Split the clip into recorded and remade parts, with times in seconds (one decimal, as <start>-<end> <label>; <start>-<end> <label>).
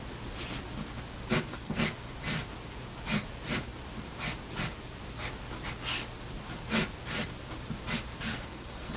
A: 0.0-1.5 recorded; 1.5-2.1 remade; 2.1-8.3 recorded; 8.3-9.0 remade